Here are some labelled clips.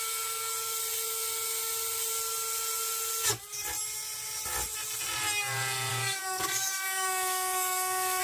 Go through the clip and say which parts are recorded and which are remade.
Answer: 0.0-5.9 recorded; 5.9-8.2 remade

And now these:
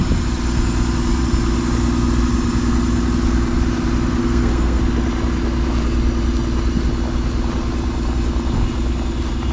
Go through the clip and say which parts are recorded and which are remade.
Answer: 0.0-4.2 recorded; 4.2-4.8 remade; 4.8-9.5 recorded

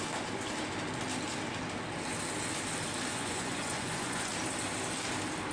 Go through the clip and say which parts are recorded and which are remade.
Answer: 0.0-3.1 recorded; 3.1-4.3 remade; 4.3-5.5 recorded

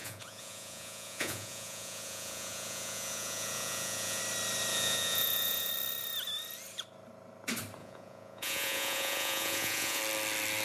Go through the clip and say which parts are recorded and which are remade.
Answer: 0.0-4.2 remade; 4.2-4.7 recorded; 4.7-5.7 remade; 5.7-7.8 recorded; 7.8-10.0 remade; 10.0-10.6 recorded

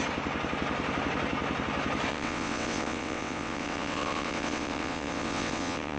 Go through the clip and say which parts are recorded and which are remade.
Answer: 0.0-2.1 recorded; 2.1-6.0 remade

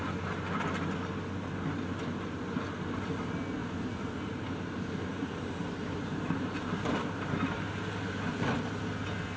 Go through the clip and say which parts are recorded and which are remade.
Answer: 0.0-3.6 recorded; 3.6-7.6 remade; 7.6-9.4 recorded